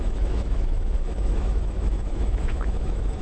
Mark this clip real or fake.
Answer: fake